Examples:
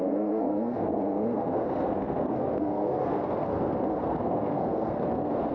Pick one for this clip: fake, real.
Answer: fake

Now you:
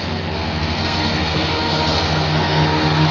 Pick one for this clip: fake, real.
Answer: fake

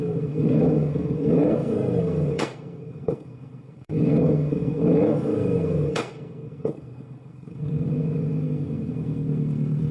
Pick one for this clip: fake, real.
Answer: fake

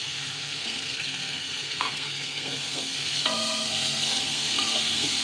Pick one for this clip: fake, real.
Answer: fake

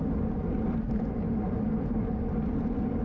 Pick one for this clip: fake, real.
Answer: real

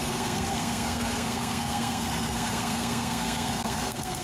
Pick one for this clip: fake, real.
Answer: fake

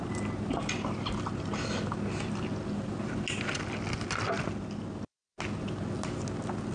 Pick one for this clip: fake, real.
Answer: real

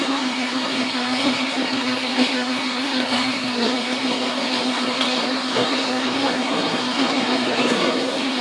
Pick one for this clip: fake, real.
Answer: fake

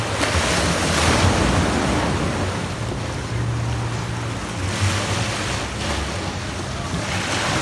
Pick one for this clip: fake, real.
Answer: real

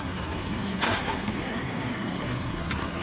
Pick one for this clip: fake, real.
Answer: fake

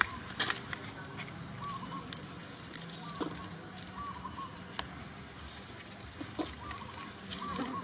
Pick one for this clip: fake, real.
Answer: real